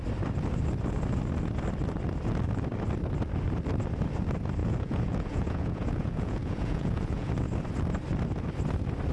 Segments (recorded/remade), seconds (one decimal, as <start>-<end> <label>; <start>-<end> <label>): 0.0-4.6 recorded; 4.6-7.3 remade; 7.3-9.1 recorded